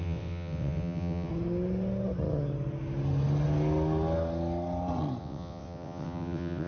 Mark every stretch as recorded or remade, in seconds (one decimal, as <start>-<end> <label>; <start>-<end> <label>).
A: 0.0-1.3 remade; 1.3-5.2 recorded; 5.2-6.7 remade